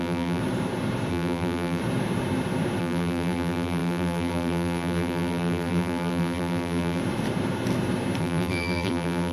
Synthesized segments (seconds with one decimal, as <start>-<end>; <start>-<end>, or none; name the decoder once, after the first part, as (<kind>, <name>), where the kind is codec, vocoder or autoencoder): 0.0-0.4 (vocoder, BigVGAN v2); 1.1-1.8; 2.8-7.0; 8.2-9.3